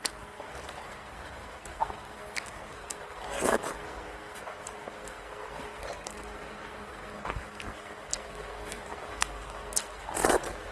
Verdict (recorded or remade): remade